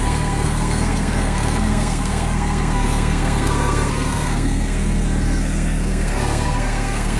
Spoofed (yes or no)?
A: yes